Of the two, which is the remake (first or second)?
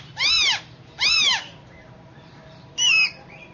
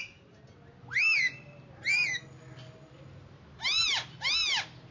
first